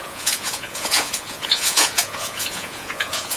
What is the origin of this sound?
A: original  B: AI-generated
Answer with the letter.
B